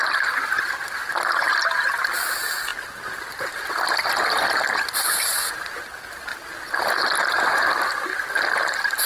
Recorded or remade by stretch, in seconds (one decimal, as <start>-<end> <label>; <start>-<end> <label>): 0.0-6.3 recorded; 6.3-7.0 remade; 7.0-8.1 recorded; 8.1-9.1 remade